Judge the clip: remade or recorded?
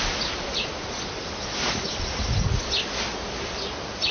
recorded